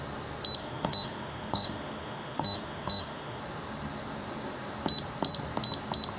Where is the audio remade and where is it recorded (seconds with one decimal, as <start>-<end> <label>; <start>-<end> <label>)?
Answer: 0.0-0.6 recorded; 0.6-3.4 remade; 3.4-6.2 recorded